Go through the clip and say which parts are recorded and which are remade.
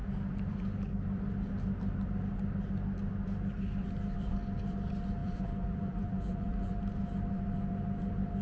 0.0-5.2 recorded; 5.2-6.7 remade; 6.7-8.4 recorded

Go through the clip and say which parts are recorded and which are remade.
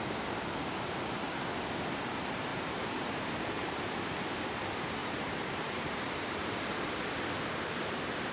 0.0-2.5 recorded; 2.5-3.7 remade; 3.7-5.0 recorded; 5.0-7.0 remade; 7.0-8.3 recorded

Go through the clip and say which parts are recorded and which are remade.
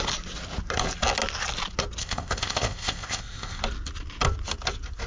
0.0-2.0 recorded; 2.0-3.6 remade; 3.6-5.1 recorded